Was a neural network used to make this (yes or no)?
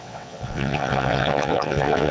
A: yes